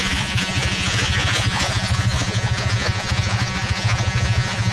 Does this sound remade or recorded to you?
remade